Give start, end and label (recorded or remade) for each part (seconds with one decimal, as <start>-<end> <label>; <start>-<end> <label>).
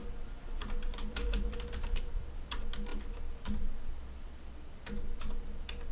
0.0-2.5 remade; 2.5-2.9 recorded; 2.9-4.5 remade; 4.5-5.9 recorded